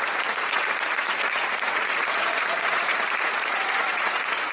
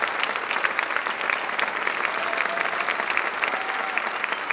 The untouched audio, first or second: second